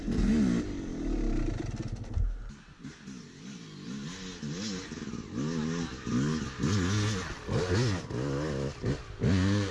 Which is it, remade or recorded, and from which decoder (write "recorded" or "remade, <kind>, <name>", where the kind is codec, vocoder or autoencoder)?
recorded